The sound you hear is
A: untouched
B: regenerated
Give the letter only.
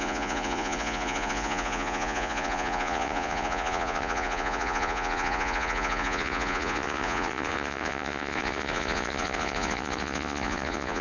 B